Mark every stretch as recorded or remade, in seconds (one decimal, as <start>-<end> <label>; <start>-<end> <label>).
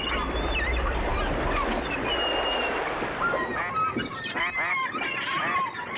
0.0-6.0 recorded